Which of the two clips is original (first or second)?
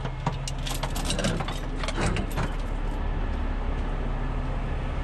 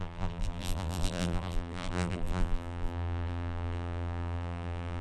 first